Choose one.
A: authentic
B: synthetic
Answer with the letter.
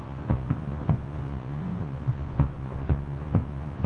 B